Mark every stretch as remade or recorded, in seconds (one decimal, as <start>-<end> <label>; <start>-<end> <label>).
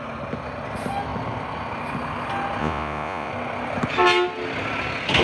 0.0-2.6 recorded; 2.6-3.3 remade; 3.3-5.2 recorded